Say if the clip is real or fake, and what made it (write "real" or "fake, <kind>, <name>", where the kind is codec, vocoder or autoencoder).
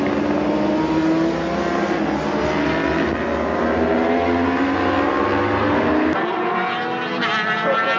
real